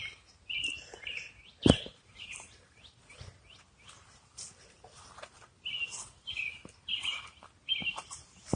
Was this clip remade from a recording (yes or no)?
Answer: no